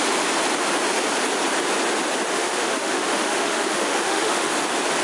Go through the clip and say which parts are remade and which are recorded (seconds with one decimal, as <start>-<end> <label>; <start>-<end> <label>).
0.0-2.3 recorded; 2.3-4.5 remade; 4.5-5.0 recorded